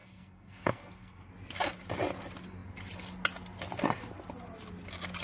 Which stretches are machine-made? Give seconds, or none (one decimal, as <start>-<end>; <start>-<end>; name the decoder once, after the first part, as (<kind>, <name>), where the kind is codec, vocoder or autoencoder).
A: 0.0-1.3 (codec, SNAC)